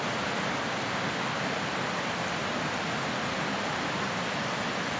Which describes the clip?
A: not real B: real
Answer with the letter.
B